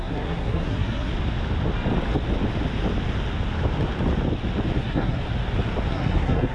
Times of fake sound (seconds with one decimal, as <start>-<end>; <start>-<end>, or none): 0.0-1.1; 4.8-5.2; 5.9-6.5